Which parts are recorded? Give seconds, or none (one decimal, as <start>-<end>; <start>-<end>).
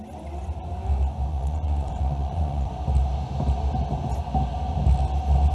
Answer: 0.0-1.3; 2.7-5.5